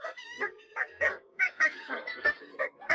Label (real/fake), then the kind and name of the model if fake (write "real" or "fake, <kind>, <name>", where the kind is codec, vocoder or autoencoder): fake, codec, SNAC